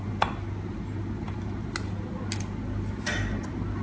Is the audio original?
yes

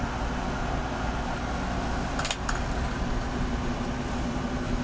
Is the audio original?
yes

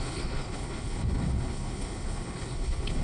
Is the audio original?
no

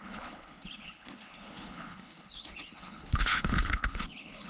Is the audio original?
no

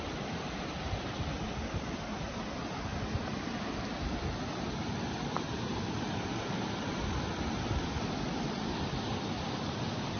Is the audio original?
yes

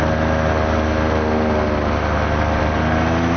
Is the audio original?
yes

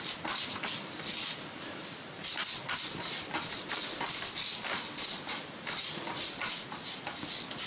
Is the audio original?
yes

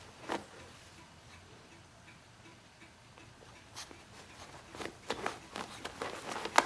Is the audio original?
yes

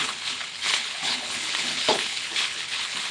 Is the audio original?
no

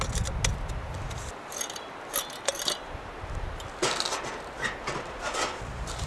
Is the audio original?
yes